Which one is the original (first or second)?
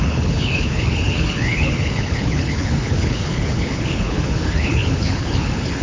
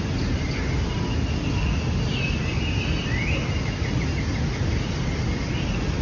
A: second